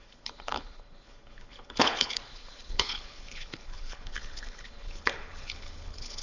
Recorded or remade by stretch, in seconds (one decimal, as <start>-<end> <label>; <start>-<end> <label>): 0.0-6.2 remade

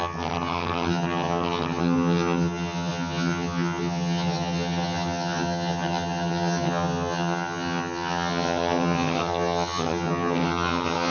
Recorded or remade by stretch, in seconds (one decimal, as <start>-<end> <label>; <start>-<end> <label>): 0.0-11.1 remade

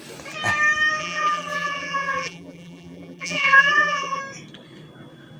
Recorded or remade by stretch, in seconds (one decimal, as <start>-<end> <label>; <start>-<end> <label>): 0.0-1.0 recorded; 1.0-4.2 remade; 4.2-5.4 recorded

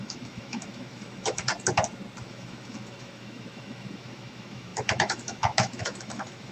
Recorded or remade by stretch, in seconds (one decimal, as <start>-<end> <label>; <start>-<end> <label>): 0.0-1.5 remade; 1.5-2.2 recorded; 2.2-6.5 remade